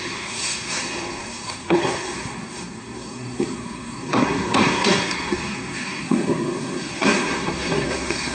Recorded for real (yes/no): no